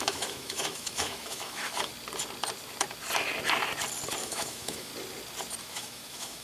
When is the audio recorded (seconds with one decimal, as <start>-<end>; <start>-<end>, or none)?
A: 1.9-4.2; 4.9-5.6